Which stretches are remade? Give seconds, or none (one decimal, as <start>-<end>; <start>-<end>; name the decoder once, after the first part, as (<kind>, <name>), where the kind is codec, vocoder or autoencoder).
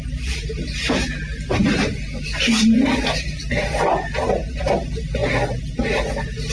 0.0-5.2 (vocoder, BigVGAN v2); 5.7-6.5